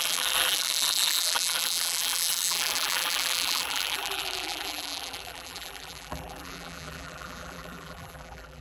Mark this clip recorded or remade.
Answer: remade